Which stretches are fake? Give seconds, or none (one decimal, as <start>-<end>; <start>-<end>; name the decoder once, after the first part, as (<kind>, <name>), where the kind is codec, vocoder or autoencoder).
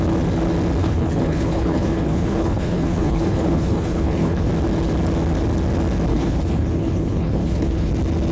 0.8-4.5 (codec, HILCodec); 6.1-7.9